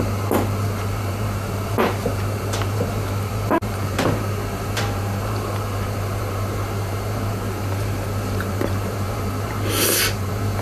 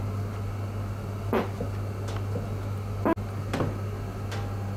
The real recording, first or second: second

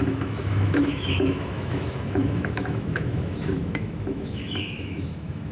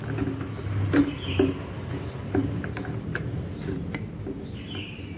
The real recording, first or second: second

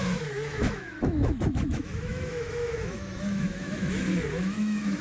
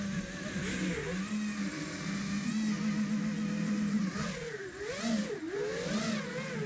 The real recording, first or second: second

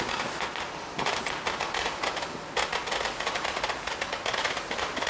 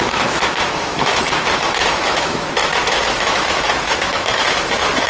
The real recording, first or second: first